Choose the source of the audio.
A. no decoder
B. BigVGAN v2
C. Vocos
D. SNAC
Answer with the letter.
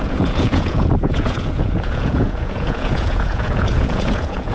C